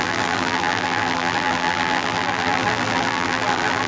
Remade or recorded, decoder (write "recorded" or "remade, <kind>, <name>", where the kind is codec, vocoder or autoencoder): remade, vocoder, BigVGAN v2